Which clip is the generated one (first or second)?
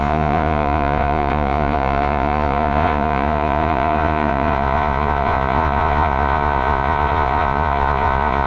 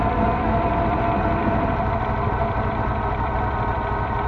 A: first